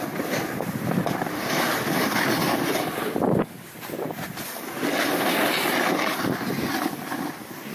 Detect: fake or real real